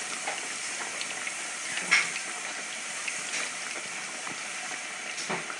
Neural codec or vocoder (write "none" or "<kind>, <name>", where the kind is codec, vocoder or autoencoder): vocoder, BigVGAN v2